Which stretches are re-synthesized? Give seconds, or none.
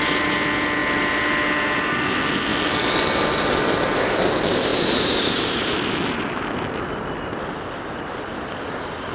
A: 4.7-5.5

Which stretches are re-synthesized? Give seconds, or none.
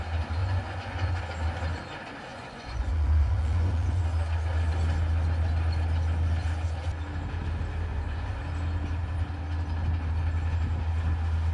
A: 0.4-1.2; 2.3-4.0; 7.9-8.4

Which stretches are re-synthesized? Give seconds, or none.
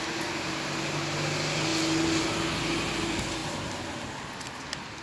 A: none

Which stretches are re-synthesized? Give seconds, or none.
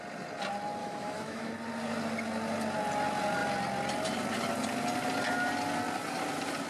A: 0.8-1.5